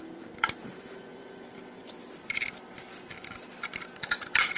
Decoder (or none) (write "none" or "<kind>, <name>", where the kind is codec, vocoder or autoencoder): vocoder, BigVGAN v2